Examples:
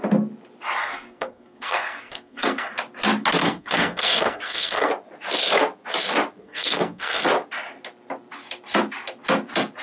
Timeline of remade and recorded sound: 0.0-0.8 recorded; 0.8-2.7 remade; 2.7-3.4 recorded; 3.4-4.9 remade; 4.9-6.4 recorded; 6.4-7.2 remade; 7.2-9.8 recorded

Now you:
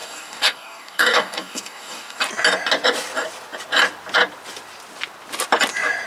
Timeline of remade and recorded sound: 0.0-2.2 remade; 2.2-6.1 recorded

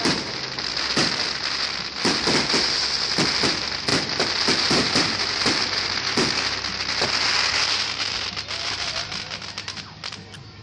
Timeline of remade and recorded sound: 0.0-10.6 recorded

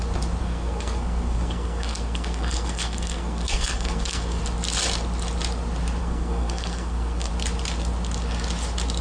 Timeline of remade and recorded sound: 0.0-0.4 recorded; 0.4-4.4 remade; 4.4-6.0 recorded; 6.0-7.3 remade; 7.3-9.0 recorded